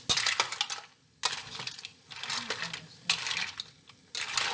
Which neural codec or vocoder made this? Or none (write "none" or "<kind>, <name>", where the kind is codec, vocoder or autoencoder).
none